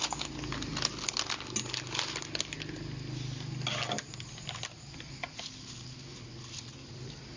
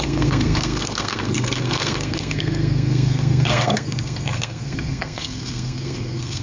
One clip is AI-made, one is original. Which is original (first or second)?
first